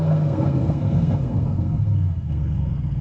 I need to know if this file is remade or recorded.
remade